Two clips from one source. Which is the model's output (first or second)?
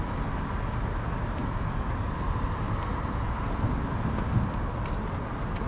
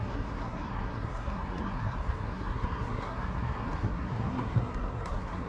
second